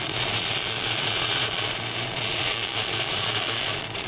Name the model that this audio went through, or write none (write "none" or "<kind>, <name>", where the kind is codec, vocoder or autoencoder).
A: vocoder, Vocos